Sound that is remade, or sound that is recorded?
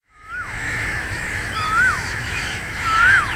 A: remade